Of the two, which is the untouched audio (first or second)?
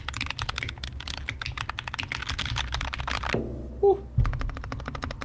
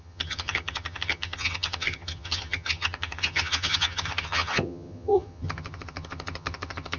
first